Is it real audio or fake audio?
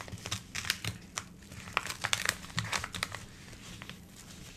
real